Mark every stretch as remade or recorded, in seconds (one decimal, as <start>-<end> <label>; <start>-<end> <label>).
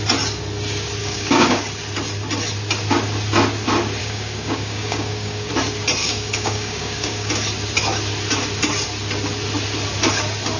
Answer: 0.0-1.0 recorded; 1.0-1.6 remade; 1.6-4.0 recorded; 4.0-5.5 remade; 5.5-6.0 recorded; 6.0-7.3 remade; 7.3-10.6 recorded